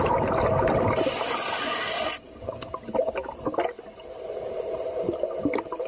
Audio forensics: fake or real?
real